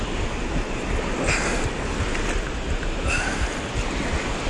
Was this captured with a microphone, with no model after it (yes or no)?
yes